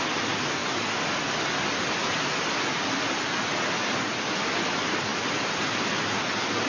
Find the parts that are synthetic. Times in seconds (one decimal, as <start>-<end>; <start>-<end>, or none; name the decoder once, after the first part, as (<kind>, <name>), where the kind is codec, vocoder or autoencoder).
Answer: none